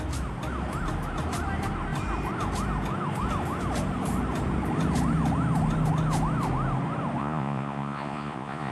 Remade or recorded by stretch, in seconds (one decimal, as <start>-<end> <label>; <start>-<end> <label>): 0.0-7.2 recorded; 7.2-8.7 remade